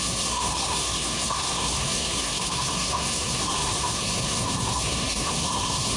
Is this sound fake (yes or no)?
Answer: yes